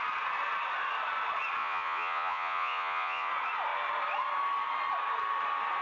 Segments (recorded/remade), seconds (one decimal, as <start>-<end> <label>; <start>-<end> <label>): 0.0-1.6 recorded; 1.6-3.3 remade; 3.3-5.8 recorded